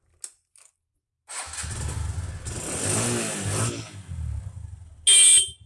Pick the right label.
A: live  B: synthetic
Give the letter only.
A